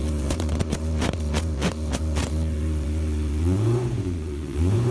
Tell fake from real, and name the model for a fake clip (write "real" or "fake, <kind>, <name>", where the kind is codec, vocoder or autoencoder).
fake, vocoder, Vocos